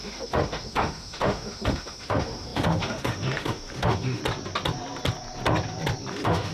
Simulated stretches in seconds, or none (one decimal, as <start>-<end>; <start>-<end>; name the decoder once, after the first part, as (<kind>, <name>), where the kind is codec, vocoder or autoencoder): 0.0-4.2 (autoencoder, DAC-VAE); 6.1-6.5